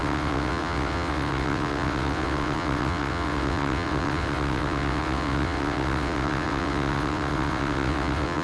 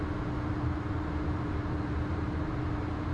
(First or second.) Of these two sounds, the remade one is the first